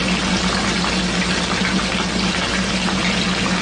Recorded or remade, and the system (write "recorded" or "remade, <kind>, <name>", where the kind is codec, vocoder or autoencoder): recorded